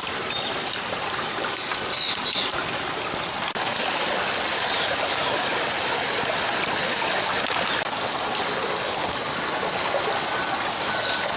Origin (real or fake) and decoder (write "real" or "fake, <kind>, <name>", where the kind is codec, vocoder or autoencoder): real